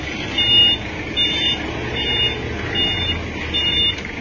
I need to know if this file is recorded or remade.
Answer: recorded